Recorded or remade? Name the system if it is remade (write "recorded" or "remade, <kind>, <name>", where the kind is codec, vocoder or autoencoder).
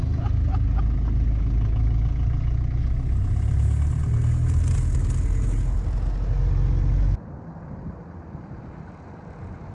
recorded